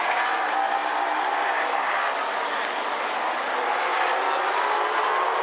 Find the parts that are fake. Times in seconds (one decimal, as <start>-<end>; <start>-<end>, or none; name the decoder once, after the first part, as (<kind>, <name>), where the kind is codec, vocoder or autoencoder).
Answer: none